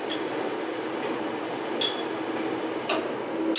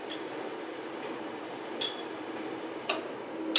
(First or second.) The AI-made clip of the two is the second